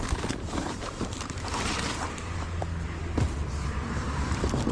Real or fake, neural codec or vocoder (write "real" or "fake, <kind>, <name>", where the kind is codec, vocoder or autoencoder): fake, vocoder, BigVGAN v2